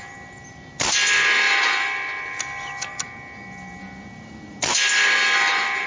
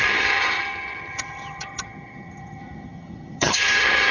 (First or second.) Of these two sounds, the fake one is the second